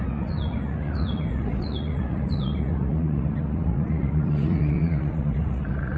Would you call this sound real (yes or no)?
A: no